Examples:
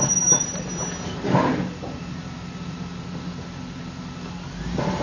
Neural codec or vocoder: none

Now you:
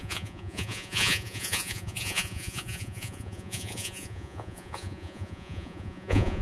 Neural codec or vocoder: vocoder, Vocos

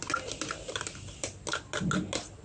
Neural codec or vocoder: none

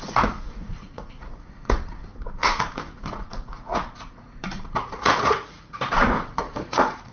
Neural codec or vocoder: vocoder, Vocos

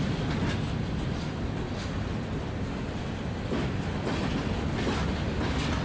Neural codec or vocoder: none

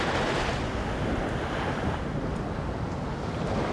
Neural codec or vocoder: none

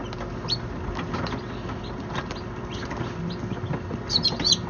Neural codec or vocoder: none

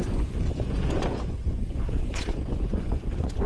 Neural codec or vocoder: vocoder, Vocos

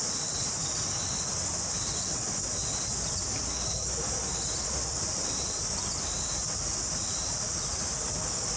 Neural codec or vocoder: none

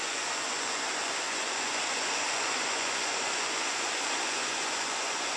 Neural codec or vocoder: vocoder, Vocos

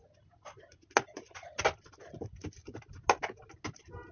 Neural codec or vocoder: none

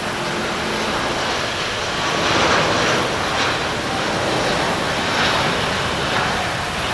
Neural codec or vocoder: none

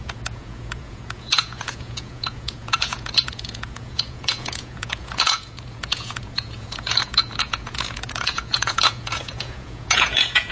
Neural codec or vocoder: vocoder, Vocos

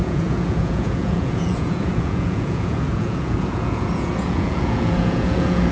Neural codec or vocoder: vocoder, Vocos